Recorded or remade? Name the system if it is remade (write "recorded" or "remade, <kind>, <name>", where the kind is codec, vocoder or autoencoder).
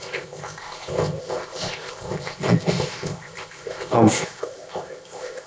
remade, codec, ZipCodec